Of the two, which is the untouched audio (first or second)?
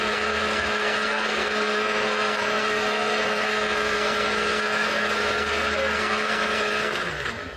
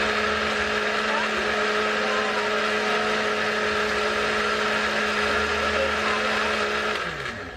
second